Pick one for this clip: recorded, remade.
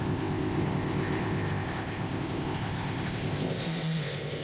remade